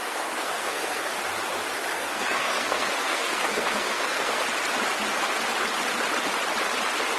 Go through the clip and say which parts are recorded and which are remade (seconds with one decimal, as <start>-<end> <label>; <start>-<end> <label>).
0.0-1.1 remade; 1.1-1.9 recorded; 1.9-4.4 remade; 4.4-7.2 recorded

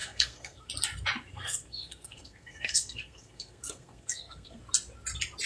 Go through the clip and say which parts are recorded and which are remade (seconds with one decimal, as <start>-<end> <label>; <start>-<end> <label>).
0.0-0.7 remade; 0.7-1.3 recorded; 1.3-4.6 remade; 4.6-5.5 recorded